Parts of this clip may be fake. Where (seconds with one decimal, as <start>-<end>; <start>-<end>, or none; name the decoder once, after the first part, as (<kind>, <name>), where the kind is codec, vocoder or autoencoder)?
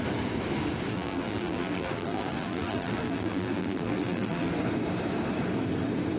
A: 0.9-4.5 (vocoder, BigVGAN v2)